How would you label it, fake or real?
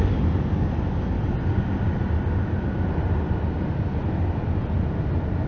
real